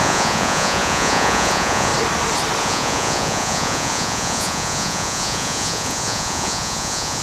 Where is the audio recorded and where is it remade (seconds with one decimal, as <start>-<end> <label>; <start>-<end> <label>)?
0.0-1.9 remade; 1.9-2.6 recorded; 2.6-7.2 remade